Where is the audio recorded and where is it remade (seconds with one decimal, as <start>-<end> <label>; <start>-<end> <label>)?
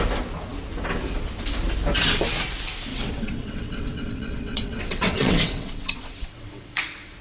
0.0-2.9 recorded; 2.9-7.2 remade